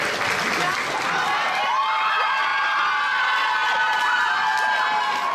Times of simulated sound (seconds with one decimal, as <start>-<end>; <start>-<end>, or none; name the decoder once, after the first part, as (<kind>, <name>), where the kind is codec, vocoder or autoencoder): none